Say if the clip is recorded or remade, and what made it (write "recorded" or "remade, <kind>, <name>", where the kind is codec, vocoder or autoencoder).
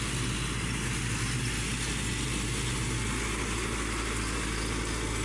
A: recorded